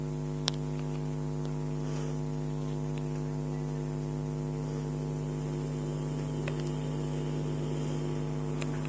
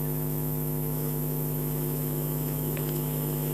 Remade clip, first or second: second